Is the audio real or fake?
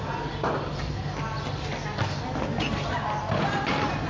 real